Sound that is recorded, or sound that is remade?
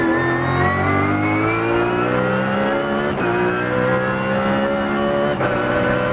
recorded